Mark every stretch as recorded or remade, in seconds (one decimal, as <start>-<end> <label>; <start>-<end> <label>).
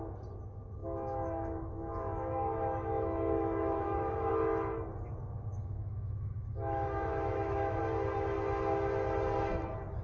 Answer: 0.0-0.8 recorded; 0.8-4.3 remade; 4.3-5.5 recorded; 5.5-7.8 remade; 7.8-10.0 recorded